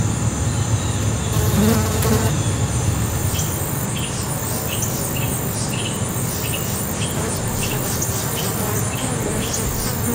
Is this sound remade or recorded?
recorded